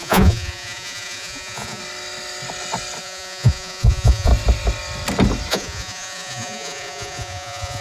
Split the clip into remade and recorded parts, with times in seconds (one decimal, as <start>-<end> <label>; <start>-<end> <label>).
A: 0.0-1.8 remade; 1.8-3.0 recorded; 3.0-4.3 remade; 4.3-5.5 recorded; 5.5-7.8 remade